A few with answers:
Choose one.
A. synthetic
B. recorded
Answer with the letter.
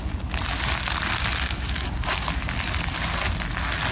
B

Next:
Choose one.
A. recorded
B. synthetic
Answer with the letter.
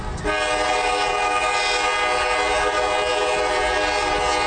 A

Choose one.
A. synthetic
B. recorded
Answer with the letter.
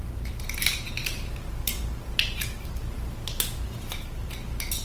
B